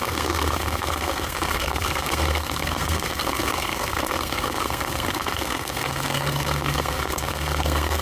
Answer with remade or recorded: remade